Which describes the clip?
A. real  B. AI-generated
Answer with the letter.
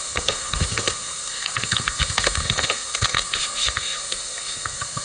B